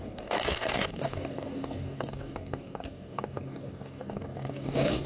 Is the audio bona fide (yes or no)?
no